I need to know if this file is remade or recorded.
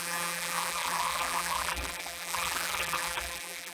remade